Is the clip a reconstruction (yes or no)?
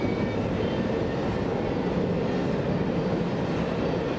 no